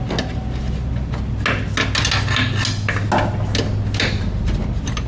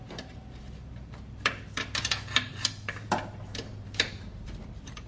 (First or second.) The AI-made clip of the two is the second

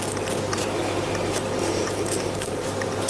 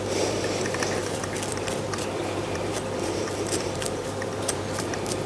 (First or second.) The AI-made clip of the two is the second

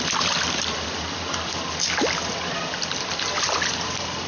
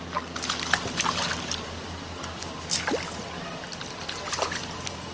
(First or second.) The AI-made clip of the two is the first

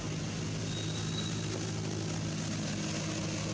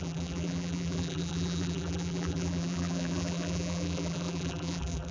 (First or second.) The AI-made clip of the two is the second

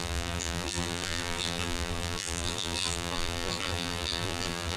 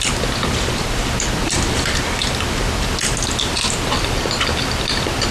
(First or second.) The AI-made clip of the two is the first